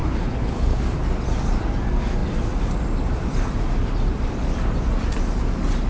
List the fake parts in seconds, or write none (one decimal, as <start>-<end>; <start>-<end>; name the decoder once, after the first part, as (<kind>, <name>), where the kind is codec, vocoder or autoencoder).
0.0-0.8 (codec, HILCodec)